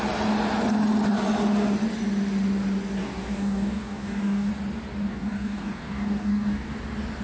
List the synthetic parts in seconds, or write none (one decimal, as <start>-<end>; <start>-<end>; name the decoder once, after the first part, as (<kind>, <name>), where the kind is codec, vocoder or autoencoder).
3.0-4.5 (codec, DAC); 5.1-6.7